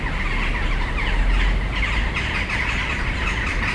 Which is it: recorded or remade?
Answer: recorded